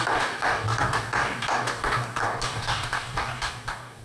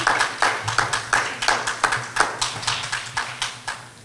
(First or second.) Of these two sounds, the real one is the second